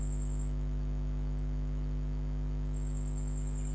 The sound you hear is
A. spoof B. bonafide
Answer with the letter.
B